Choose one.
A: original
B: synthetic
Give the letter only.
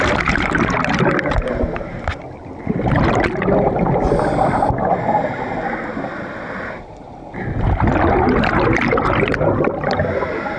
A